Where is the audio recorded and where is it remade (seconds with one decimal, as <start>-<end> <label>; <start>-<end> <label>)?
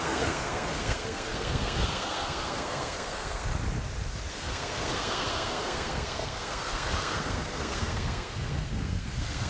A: 0.0-3.5 remade; 3.5-4.3 recorded; 4.3-9.5 remade